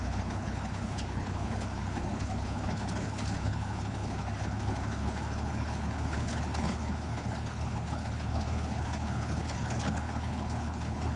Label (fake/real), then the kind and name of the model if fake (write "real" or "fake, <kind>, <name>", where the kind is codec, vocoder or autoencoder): fake, codec, HILCodec